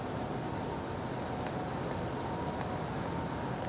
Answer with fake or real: real